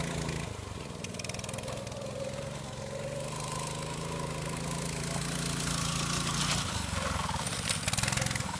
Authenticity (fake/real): real